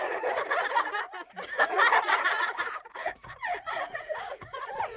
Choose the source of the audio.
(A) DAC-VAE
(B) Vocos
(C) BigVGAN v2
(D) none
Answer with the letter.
B